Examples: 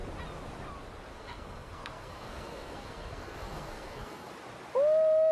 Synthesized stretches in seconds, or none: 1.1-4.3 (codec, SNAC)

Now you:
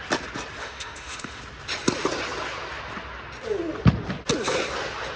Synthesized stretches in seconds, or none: 0.6-1.4 (autoencoder, DAC-VAE)

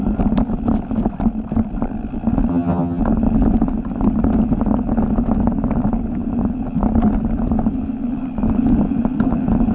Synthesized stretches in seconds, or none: 2.5-3.0 (vocoder, HiFi-GAN)

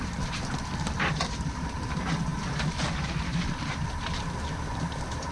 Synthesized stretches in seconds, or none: 0.0-5.3 (vocoder, BigVGAN v2)

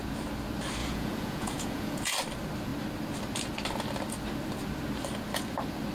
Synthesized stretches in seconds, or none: 0.8-2.1 (vocoder, Vocos)